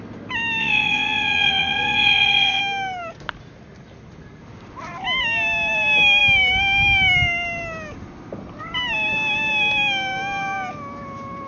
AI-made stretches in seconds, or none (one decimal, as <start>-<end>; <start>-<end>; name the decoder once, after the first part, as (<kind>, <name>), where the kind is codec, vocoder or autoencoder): 0.6-2.6 (vocoder, WaveNeXt)